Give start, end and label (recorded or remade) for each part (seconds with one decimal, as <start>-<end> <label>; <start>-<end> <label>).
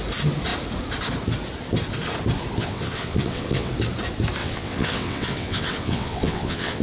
0.0-2.6 recorded; 2.6-3.7 remade; 3.7-4.4 recorded; 4.4-6.8 remade